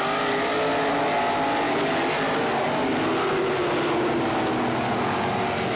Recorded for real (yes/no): yes